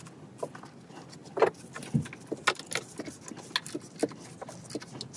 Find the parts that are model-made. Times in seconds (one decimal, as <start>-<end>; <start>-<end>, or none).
none